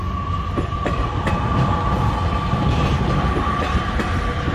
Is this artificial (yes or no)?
no